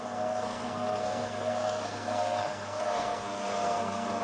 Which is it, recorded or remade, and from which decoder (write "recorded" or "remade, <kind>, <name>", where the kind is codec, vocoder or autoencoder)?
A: remade, codec, SNAC